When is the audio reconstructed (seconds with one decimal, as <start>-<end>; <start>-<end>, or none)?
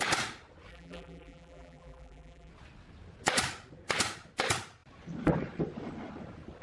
0.7-2.5